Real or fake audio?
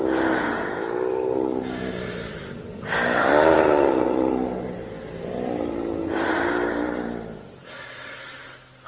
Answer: real